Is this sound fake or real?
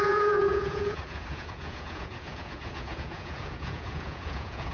fake